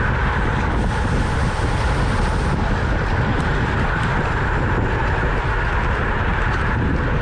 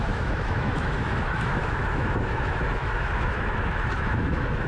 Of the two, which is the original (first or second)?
first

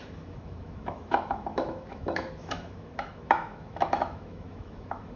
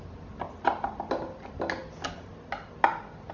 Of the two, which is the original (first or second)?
second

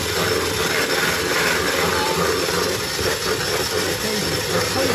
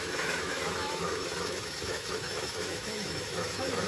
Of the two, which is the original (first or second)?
first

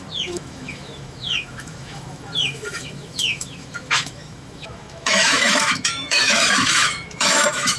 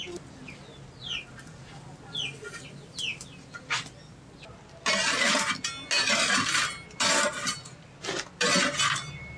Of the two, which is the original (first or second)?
second